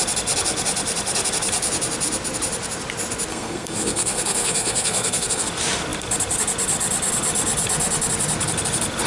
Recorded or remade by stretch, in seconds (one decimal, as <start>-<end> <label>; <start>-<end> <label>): 0.0-3.3 recorded; 3.3-5.5 remade; 5.5-9.1 recorded